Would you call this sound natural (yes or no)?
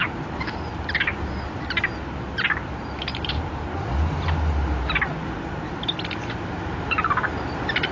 yes